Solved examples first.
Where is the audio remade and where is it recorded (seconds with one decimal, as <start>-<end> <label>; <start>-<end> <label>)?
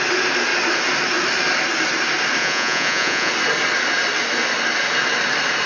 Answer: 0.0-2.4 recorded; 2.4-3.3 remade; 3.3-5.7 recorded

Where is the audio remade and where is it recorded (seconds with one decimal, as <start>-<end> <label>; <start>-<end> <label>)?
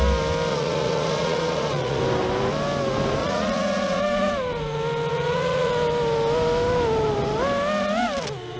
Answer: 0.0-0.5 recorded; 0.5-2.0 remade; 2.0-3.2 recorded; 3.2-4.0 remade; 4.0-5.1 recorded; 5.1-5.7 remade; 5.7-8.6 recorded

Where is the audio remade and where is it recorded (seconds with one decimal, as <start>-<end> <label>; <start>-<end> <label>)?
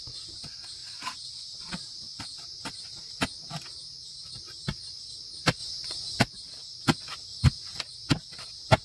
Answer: 0.0-0.8 recorded; 0.8-1.6 remade; 1.6-5.6 recorded; 5.6-6.2 remade; 6.2-7.3 recorded; 7.3-7.8 remade; 7.8-8.8 recorded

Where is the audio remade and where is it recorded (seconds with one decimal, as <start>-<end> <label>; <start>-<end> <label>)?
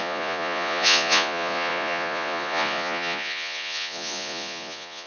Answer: 0.0-5.1 remade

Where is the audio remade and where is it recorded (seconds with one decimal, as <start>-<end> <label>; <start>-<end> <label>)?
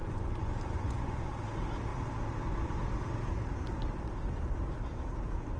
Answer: 0.0-1.3 remade; 1.3-5.6 recorded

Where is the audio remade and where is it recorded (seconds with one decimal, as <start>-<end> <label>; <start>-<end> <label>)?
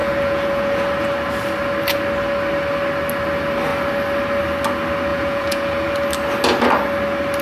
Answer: 0.0-0.8 remade; 0.8-5.1 recorded; 5.1-5.9 remade; 5.9-7.4 recorded